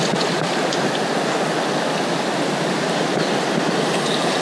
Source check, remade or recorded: recorded